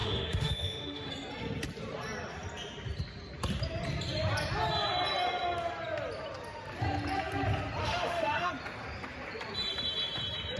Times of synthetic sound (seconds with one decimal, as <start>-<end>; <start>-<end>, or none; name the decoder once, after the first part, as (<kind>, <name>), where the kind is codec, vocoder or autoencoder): 0.0-1.1 (autoencoder, DAC-VAE); 7.8-8.5